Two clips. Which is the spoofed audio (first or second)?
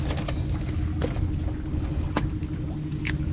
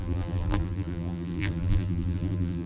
second